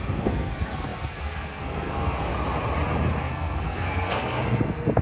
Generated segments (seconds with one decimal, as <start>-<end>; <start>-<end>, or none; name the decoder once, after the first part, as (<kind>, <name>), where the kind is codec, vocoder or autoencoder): 0.0-2.3 (codec, SNAC); 3.2-5.0